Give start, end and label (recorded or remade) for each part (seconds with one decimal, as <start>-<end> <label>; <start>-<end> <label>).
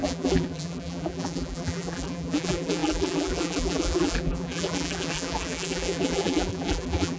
0.0-7.2 remade